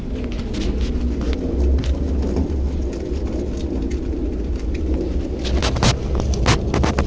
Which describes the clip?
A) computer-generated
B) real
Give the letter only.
B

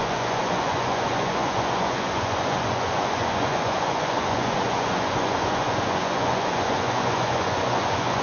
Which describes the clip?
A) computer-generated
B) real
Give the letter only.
A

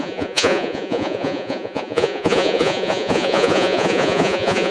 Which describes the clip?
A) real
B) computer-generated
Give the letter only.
B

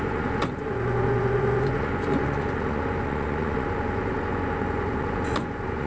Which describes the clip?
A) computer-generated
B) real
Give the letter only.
A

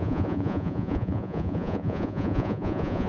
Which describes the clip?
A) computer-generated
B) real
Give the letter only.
A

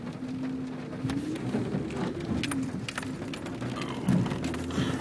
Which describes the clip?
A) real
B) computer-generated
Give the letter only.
A